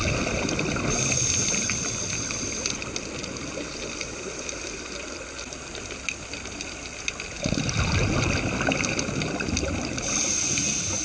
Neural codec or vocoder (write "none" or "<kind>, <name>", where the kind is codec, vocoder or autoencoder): none